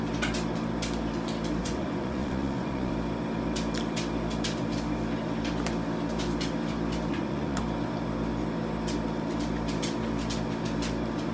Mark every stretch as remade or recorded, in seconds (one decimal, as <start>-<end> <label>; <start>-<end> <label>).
0.0-1.6 recorded; 1.6-2.9 remade; 2.9-7.1 recorded; 7.1-7.6 remade; 7.6-11.3 recorded